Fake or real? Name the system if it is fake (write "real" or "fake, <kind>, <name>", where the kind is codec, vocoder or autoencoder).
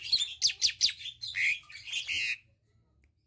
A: real